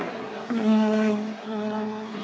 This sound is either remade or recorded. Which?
remade